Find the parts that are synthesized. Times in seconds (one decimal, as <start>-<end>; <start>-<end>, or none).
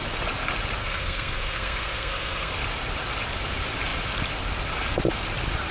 0.8-2.5